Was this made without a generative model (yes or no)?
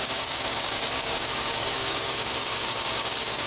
no